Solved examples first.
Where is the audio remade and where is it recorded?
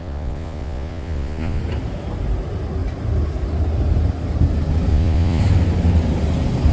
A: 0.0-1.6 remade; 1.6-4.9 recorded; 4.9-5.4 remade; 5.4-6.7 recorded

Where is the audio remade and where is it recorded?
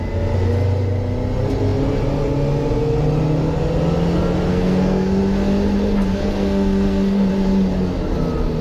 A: 0.0-4.5 recorded; 4.5-5.2 remade; 5.2-6.1 recorded; 6.1-7.3 remade; 7.3-8.6 recorded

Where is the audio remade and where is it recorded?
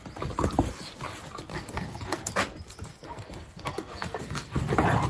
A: 0.0-1.5 recorded; 1.5-2.3 remade; 2.3-2.9 recorded; 2.9-4.6 remade; 4.6-5.1 recorded